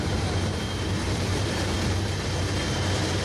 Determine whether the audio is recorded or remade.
remade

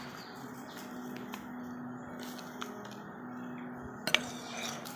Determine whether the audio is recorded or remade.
recorded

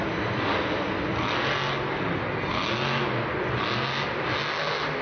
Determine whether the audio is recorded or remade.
recorded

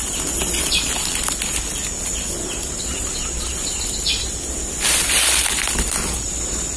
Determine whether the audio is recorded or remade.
recorded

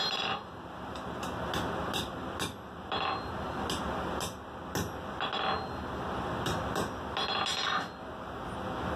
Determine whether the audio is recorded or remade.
recorded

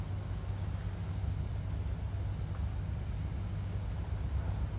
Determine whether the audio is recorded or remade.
recorded